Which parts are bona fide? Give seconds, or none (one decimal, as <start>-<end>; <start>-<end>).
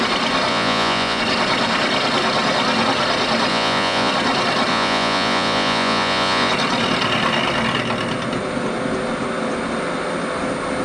0.0-0.5; 1.2-3.5; 4.1-4.7; 6.5-10.8